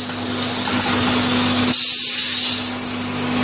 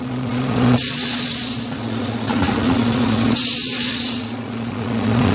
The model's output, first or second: second